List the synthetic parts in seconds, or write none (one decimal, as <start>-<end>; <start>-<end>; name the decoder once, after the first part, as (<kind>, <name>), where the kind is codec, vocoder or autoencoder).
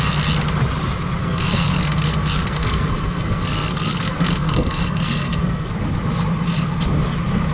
1.2-5.7 (codec, SNAC)